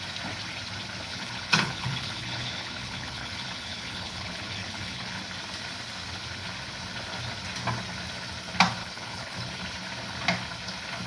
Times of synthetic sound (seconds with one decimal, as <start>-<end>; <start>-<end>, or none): 1.1-5.2; 8.8-9.5